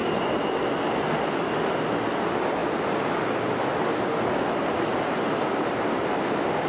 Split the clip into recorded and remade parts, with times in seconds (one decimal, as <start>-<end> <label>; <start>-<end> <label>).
0.0-6.7 recorded